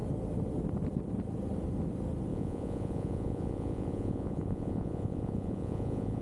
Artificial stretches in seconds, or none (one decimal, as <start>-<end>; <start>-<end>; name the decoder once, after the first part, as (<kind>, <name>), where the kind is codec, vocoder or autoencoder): 2.3-6.2 (vocoder, Vocos)